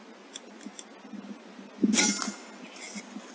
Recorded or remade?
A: recorded